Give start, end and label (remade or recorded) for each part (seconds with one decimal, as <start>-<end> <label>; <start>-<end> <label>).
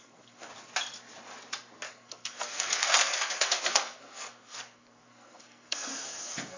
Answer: 0.0-0.5 remade; 0.5-1.9 recorded; 1.9-6.6 remade